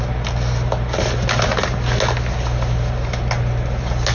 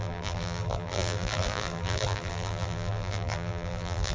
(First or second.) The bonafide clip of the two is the first